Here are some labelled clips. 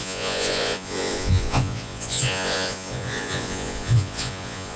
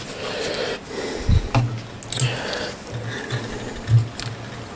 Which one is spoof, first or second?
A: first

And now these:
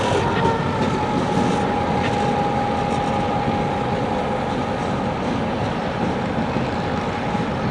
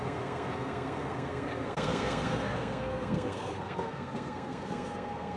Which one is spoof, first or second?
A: second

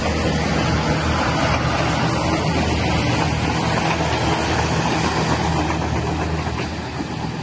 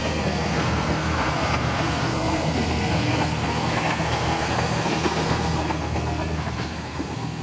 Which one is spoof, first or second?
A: second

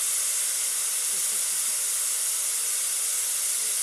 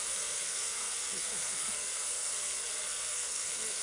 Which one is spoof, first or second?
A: second